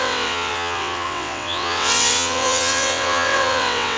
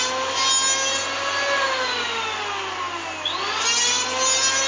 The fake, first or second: first